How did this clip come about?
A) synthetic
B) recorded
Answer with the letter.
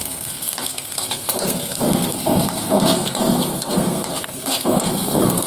A